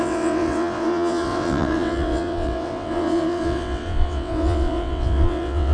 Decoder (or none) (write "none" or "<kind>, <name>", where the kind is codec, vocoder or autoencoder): vocoder, WaveNeXt